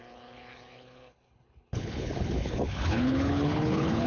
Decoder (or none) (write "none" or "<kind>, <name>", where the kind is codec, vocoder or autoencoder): codec, HILCodec